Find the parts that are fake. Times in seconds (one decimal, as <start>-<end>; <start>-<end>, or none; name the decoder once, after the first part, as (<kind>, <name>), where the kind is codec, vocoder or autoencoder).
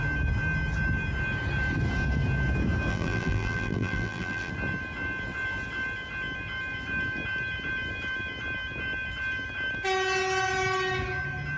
2.9-4.5 (vocoder, BigVGAN v2)